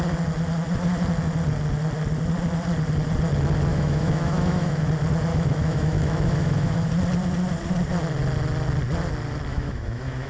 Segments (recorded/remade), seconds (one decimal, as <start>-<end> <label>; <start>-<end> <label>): 0.0-3.7 recorded; 3.7-4.8 remade; 4.8-5.3 recorded; 5.3-6.9 remade; 6.9-9.5 recorded; 9.5-10.3 remade